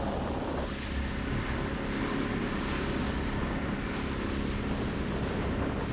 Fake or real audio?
real